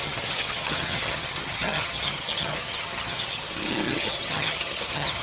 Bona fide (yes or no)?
no